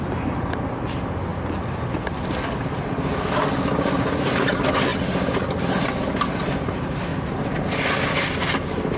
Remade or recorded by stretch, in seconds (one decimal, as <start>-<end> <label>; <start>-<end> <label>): 0.0-9.0 recorded